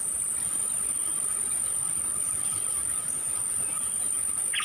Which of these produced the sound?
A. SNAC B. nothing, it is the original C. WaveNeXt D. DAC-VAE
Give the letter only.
B